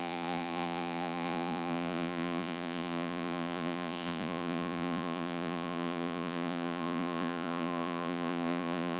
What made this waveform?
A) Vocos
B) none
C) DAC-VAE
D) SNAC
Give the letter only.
A